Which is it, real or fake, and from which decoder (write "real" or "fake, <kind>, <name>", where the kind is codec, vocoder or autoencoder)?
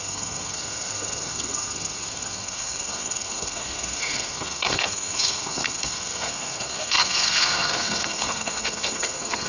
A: fake, codec, SNAC